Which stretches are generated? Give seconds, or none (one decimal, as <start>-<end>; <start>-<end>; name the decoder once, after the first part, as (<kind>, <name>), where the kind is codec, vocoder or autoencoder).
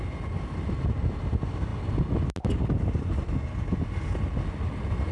none